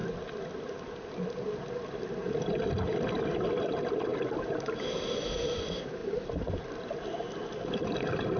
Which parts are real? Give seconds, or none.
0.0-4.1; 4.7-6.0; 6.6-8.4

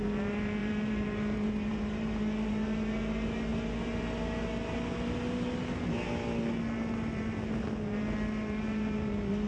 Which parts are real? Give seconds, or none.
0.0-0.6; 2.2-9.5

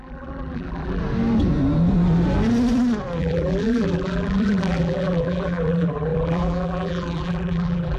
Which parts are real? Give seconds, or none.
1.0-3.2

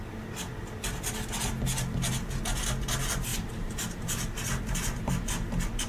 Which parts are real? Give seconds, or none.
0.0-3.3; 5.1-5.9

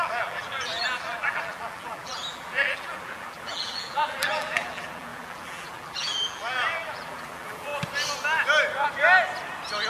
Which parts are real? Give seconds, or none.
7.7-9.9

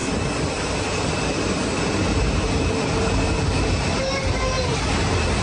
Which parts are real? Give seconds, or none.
0.0-5.4